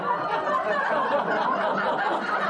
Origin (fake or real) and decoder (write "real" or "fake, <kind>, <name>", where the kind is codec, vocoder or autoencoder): real